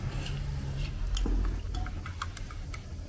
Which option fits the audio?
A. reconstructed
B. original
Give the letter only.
B